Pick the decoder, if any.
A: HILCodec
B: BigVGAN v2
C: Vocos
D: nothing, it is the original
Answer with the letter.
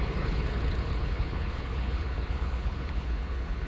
A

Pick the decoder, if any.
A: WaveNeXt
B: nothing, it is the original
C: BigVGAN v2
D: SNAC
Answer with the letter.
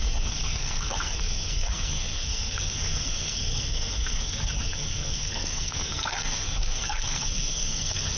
D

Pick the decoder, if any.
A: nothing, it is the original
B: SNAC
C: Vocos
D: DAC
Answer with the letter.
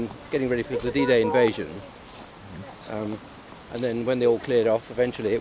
A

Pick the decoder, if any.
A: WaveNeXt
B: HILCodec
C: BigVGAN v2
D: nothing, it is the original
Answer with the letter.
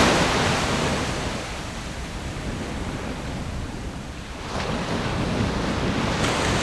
D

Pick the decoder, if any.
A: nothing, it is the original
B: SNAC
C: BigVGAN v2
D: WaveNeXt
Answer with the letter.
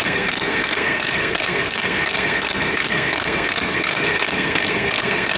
B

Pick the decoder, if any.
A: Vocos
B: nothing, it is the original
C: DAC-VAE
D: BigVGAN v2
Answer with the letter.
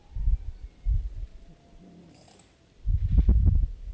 B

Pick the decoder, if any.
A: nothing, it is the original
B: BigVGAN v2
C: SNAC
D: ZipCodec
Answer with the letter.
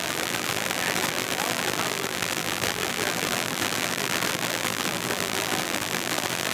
B